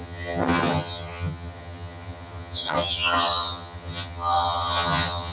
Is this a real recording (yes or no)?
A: no